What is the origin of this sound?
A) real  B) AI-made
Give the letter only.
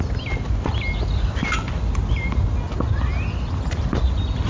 A